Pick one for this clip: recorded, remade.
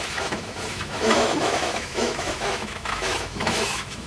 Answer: remade